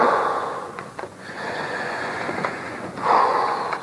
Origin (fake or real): fake